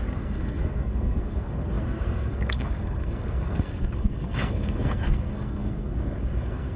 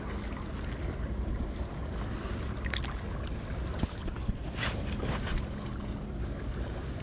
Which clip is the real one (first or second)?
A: second